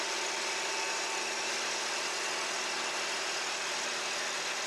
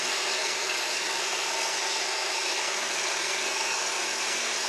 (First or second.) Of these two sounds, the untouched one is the first